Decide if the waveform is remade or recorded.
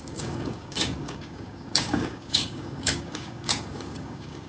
remade